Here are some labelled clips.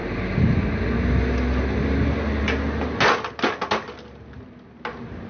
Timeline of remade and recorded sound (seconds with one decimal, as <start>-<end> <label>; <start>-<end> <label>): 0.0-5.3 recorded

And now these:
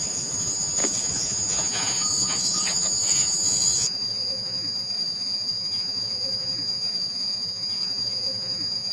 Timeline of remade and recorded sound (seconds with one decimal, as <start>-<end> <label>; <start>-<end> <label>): 0.0-8.9 remade

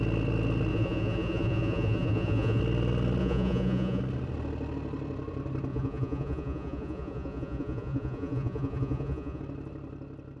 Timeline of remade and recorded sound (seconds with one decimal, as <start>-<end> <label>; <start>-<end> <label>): 0.0-0.7 recorded; 0.7-2.6 remade; 2.6-3.2 recorded; 3.2-4.0 remade; 4.0-5.7 recorded; 5.7-9.4 remade; 9.4-10.4 recorded

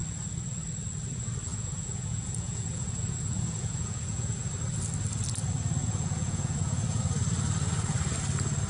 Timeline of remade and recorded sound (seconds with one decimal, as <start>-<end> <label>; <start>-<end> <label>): 0.0-1.5 recorded; 1.5-4.5 remade; 4.5-5.8 recorded; 5.8-7.0 remade; 7.0-8.7 recorded

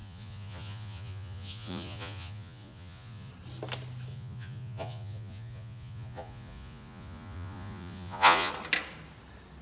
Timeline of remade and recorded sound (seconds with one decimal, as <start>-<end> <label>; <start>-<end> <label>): 0.0-3.3 remade; 3.3-4.1 recorded; 4.1-8.5 remade; 8.5-9.6 recorded

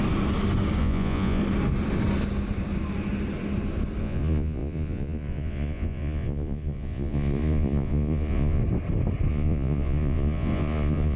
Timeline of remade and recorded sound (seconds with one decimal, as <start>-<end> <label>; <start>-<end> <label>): 0.0-0.8 recorded; 0.8-1.4 remade; 1.4-4.0 recorded; 4.0-8.6 remade; 8.6-9.3 recorded; 9.3-11.2 remade